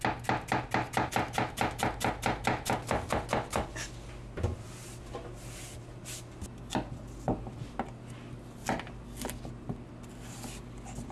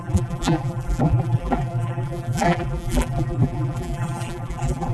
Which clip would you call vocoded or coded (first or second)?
second